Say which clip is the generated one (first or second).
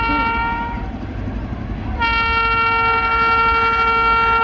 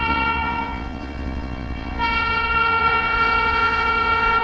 second